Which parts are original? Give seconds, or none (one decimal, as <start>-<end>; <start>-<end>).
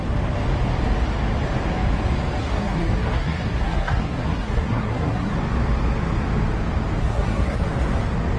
0.0-2.4; 5.3-7.0; 7.6-8.4